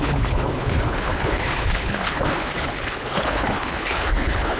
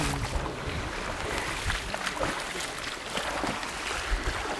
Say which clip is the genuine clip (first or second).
second